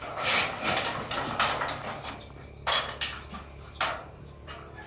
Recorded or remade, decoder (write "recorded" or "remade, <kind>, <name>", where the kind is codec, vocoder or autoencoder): recorded